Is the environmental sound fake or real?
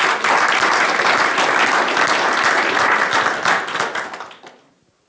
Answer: real